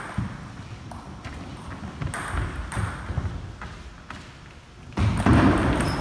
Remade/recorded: recorded